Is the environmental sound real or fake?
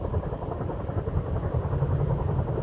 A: real